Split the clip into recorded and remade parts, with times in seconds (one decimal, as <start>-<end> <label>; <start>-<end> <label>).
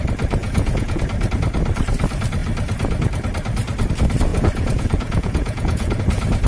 0.0-0.4 recorded; 0.4-1.0 remade; 1.0-4.3 recorded; 4.3-6.0 remade; 6.0-6.5 recorded